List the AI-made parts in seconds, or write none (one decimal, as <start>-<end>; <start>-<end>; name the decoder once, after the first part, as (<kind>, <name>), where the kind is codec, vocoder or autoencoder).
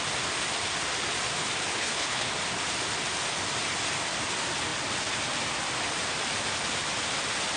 1.7-2.3 (codec, HILCodec)